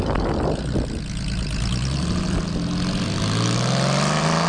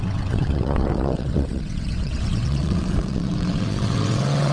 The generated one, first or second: second